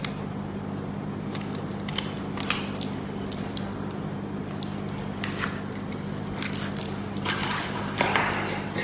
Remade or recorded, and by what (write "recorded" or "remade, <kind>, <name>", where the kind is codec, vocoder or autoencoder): recorded